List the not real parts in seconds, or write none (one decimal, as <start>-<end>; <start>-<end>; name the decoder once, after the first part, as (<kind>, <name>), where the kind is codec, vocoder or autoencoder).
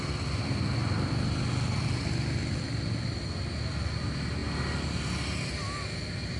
none